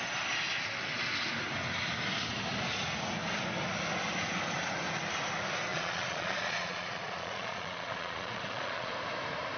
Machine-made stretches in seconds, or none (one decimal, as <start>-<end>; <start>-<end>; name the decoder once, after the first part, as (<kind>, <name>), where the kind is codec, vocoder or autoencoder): 5.7-8.9 (vocoder, Vocos)